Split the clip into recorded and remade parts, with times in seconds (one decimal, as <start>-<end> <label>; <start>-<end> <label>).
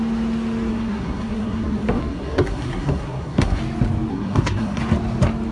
0.0-0.7 recorded; 0.7-3.6 remade; 3.6-4.1 recorded; 4.1-4.8 remade; 4.8-5.5 recorded